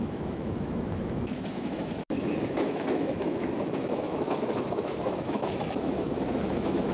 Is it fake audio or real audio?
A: fake